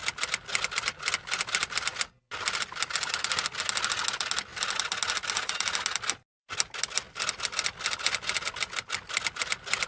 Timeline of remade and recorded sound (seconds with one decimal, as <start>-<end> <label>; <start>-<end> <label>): 0.0-9.9 recorded